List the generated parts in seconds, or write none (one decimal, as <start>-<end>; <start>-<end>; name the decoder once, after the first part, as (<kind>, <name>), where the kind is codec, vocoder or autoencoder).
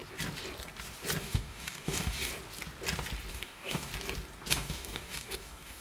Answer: 1.2-2.3 (codec, DAC); 3.3-3.9; 4.5-5.8